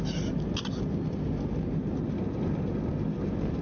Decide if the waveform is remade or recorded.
recorded